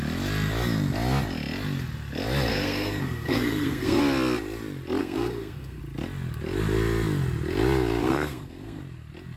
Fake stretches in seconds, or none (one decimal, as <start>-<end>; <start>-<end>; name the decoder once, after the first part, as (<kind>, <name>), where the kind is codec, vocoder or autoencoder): 2.5-4.0 (codec, SNAC); 5.0-5.8; 8.0-8.8